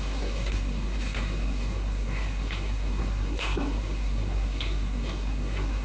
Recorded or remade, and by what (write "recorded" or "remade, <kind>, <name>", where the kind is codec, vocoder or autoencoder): remade, codec, SNAC